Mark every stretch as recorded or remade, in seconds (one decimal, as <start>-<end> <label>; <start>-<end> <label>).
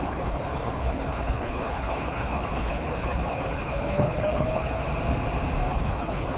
0.0-4.8 remade; 4.8-5.7 recorded; 5.7-6.4 remade